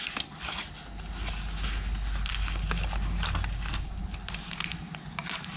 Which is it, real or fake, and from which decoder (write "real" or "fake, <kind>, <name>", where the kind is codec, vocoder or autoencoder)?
real